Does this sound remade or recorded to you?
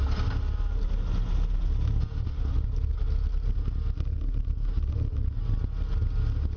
recorded